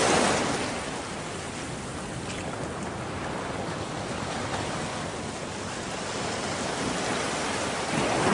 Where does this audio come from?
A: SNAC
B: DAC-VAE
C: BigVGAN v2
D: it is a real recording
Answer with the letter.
D